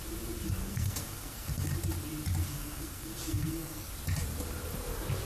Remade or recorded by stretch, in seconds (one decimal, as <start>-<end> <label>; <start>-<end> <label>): 0.0-0.6 recorded; 0.6-1.7 remade; 1.7-2.4 recorded; 2.4-3.9 remade; 3.9-5.2 recorded